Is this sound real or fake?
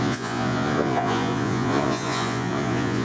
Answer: fake